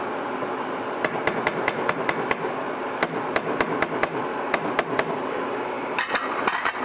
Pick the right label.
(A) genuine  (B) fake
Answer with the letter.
A